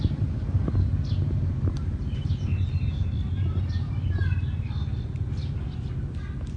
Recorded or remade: recorded